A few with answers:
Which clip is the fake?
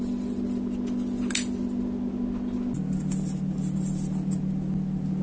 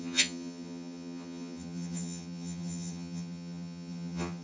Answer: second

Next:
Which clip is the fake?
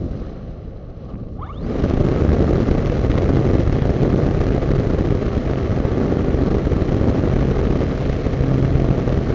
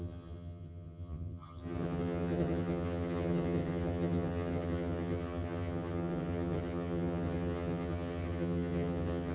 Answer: second